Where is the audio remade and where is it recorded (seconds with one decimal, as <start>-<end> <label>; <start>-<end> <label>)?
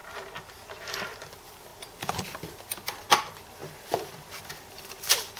0.0-0.8 recorded; 0.8-5.4 remade